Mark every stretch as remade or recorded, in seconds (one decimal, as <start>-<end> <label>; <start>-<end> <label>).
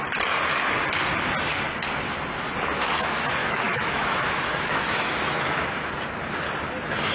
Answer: 0.0-3.4 recorded; 3.4-5.9 remade; 5.9-7.1 recorded